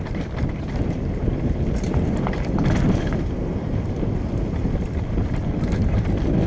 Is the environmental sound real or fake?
real